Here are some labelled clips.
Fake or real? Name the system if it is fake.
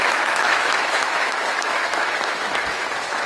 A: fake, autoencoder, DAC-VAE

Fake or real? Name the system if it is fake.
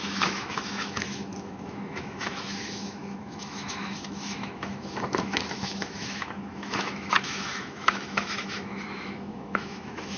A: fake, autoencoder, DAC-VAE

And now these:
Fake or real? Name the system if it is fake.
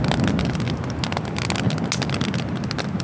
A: real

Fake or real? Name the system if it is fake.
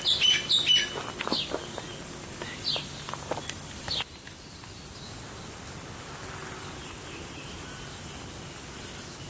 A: real